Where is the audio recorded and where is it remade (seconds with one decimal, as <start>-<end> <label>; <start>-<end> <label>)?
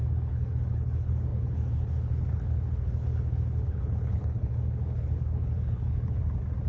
0.0-6.2 remade; 6.2-6.7 recorded